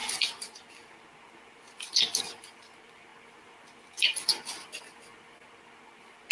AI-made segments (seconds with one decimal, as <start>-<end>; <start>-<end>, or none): none